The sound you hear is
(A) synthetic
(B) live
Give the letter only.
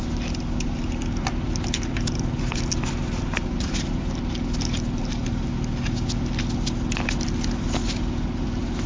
B